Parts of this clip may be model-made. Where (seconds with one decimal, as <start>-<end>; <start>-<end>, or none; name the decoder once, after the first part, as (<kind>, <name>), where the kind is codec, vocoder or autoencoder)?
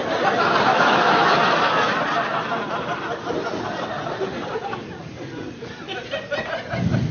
0.7-1.4 (autoencoder, DAC-VAE)